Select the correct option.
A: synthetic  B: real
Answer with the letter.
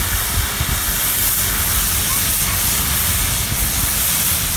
B